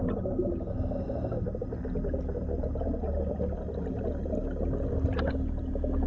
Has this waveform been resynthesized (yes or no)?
no